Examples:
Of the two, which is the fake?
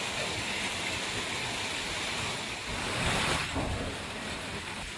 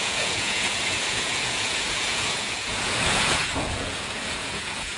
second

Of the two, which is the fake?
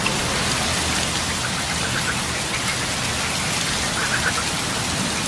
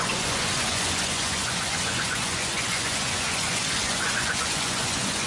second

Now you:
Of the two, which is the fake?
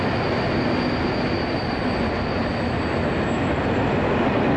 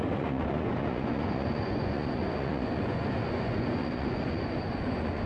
second